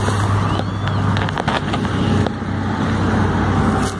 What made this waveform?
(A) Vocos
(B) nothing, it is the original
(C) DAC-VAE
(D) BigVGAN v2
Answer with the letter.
B